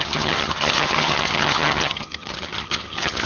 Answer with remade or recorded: remade